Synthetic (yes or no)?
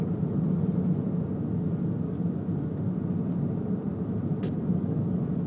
no